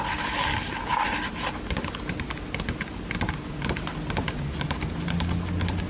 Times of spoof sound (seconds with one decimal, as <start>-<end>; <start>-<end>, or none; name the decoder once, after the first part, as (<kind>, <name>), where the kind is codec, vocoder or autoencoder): none